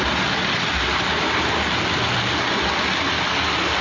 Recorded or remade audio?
recorded